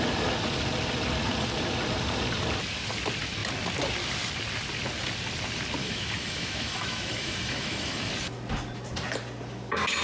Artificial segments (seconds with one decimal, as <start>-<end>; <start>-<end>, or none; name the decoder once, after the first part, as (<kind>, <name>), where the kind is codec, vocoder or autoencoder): 5.8-8.1 (autoencoder, DAC-VAE)